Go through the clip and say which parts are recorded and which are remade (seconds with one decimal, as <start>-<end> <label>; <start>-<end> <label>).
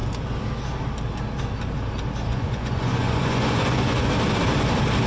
0.0-2.3 recorded; 2.3-4.1 remade; 4.1-5.1 recorded